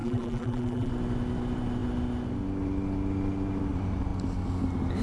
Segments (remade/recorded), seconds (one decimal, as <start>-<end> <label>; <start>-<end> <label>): 0.0-0.9 remade; 0.9-5.0 recorded